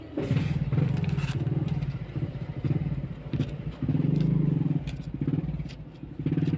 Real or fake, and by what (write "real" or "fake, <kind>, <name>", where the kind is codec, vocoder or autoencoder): real